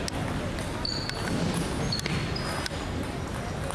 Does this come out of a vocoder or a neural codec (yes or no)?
no